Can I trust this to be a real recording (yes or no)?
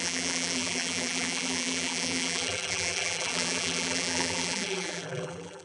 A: no